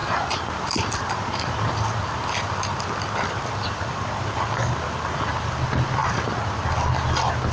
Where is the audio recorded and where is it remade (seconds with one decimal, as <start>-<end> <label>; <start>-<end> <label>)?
0.0-4.5 remade; 4.5-7.5 recorded